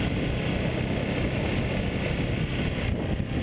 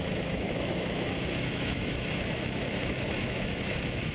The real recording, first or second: first